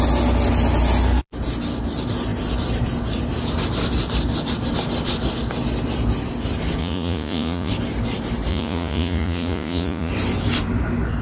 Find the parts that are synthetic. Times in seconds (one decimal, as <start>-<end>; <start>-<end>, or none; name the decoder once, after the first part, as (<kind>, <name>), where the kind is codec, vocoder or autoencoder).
6.8-7.7 (vocoder, Vocos); 8.5-10.1